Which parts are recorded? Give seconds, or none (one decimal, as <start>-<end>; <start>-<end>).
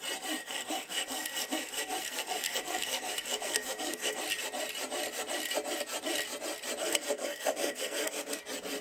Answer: 0.0-0.4; 4.2-6.8; 8.4-8.8